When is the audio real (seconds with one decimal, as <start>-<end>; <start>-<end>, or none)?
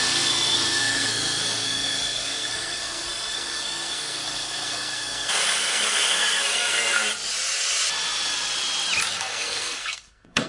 7.0-9.2